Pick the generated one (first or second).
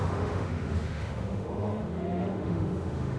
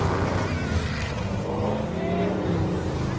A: first